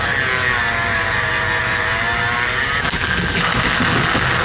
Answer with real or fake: real